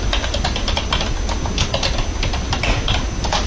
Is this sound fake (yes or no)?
no